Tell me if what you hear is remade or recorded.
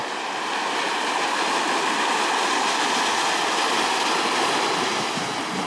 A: recorded